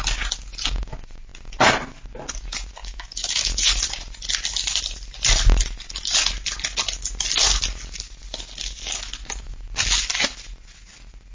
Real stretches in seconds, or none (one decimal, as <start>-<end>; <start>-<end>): 0.0-2.8; 3.7-11.3